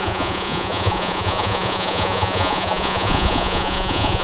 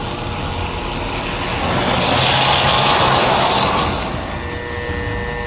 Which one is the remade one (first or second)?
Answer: first